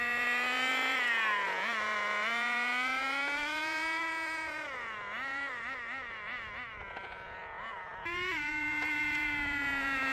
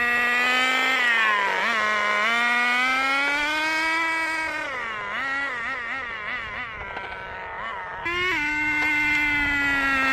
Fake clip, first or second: first